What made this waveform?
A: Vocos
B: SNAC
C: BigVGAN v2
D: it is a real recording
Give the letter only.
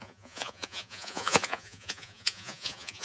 A